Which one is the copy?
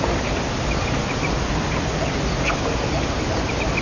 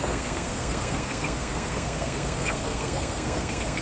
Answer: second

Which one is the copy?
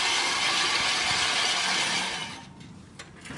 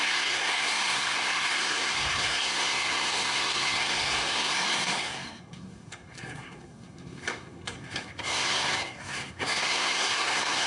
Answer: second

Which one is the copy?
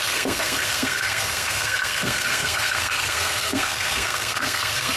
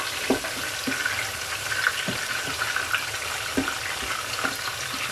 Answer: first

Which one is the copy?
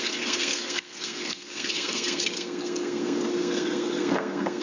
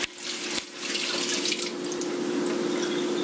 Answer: first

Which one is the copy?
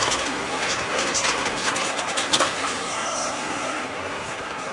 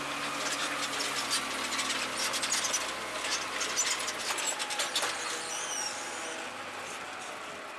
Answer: first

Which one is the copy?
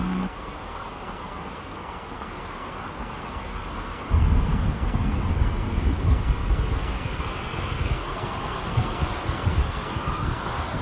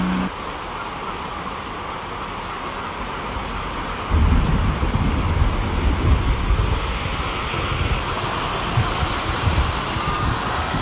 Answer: first